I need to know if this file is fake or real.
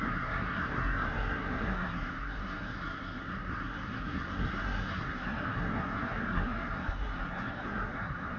fake